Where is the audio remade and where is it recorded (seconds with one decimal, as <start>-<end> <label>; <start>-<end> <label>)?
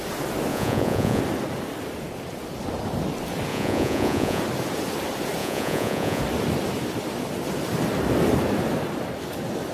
0.0-0.5 recorded; 0.5-1.2 remade; 1.2-3.5 recorded; 3.5-4.4 remade; 4.4-5.4 recorded; 5.4-6.2 remade; 6.2-9.7 recorded